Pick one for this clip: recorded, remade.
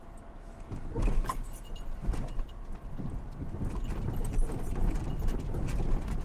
recorded